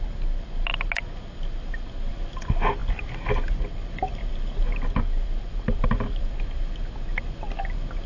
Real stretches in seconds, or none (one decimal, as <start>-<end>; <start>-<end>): 0.0-8.1